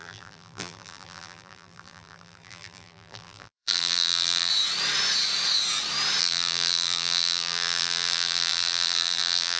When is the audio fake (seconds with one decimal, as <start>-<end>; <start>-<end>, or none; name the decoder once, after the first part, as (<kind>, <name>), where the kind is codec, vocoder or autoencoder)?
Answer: 0.0-4.5 (vocoder, BigVGAN v2); 6.2-9.6